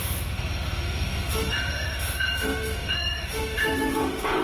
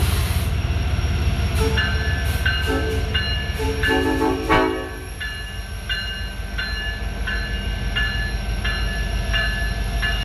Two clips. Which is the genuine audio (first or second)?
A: second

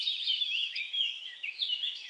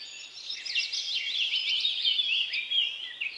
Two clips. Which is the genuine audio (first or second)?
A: second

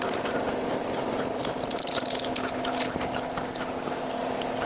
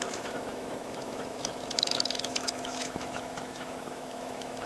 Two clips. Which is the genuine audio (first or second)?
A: first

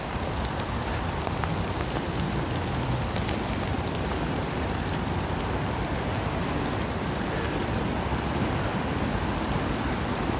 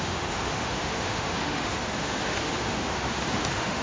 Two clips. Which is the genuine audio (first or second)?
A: first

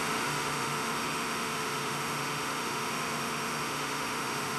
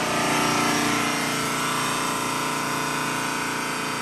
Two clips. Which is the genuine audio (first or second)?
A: second